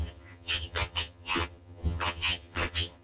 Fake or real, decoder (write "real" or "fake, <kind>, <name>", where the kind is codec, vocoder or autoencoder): fake, vocoder, HiFi-GAN